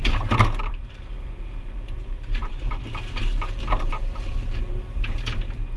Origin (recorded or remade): remade